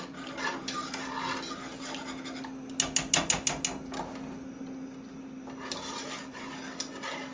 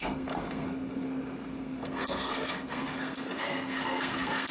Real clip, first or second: first